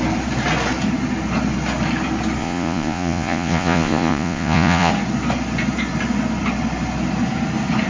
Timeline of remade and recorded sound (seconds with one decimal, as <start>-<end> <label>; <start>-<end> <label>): 0.0-2.4 recorded; 2.4-4.9 remade; 4.9-7.9 recorded